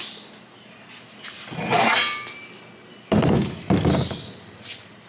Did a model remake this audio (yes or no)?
no